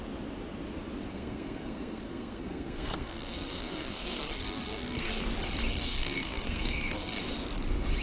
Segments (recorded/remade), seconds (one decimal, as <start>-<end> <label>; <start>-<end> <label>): 0.0-1.1 recorded; 1.1-5.2 remade; 5.2-5.7 recorded; 5.7-7.2 remade; 7.2-8.0 recorded